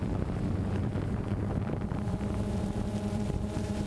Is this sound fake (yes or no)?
yes